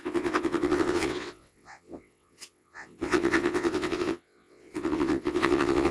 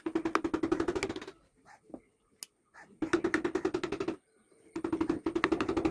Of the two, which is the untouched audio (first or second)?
second